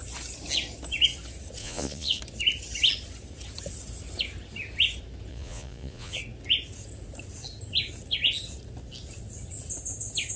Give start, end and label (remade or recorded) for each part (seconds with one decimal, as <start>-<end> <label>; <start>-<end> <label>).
0.0-1.6 recorded; 1.6-2.2 remade; 2.2-5.3 recorded; 5.3-6.2 remade; 6.2-10.4 recorded